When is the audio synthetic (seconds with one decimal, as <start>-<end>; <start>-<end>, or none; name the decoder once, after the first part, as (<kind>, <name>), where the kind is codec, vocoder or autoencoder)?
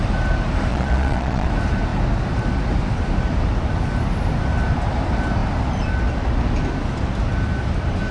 0.7-1.5 (vocoder, Vocos)